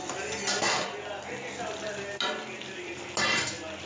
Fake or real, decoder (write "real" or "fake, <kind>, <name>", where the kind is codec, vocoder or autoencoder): real